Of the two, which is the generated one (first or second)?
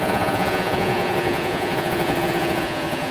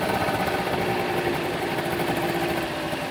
first